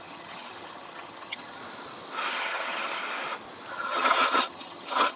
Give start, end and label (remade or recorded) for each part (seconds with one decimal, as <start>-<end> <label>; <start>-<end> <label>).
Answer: 0.0-1.6 remade; 1.6-2.3 recorded; 2.3-3.0 remade; 3.0-3.7 recorded; 3.7-5.2 remade